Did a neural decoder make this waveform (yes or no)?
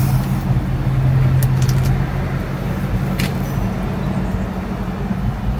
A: no